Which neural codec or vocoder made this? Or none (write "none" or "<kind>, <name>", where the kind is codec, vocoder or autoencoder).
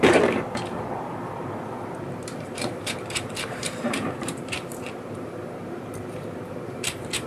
vocoder, BigVGAN v2